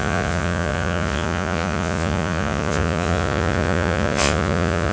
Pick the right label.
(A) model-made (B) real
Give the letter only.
A